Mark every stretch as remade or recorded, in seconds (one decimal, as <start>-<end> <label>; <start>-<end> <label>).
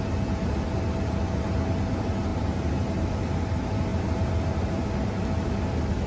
0.0-2.3 recorded; 2.3-3.5 remade; 3.5-6.1 recorded